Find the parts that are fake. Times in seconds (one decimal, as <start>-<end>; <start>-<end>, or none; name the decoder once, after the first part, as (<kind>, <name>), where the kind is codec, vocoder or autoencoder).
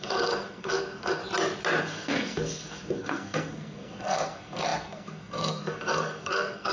0.0-1.2 (codec, SNAC); 1.8-6.7